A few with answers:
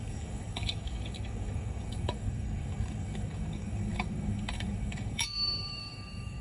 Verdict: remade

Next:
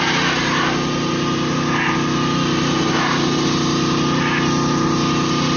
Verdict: recorded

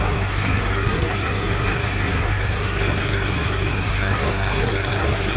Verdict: remade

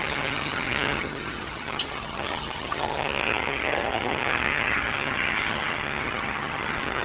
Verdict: remade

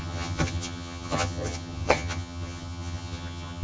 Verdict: remade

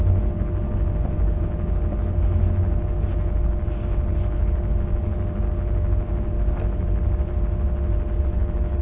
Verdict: recorded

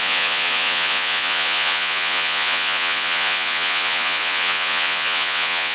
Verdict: remade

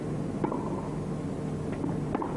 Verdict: recorded